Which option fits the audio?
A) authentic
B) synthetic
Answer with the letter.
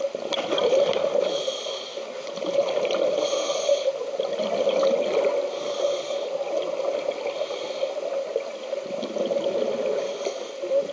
A